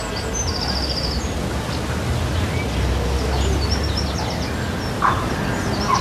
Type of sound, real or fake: real